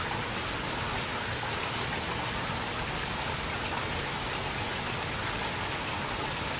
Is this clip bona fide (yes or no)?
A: yes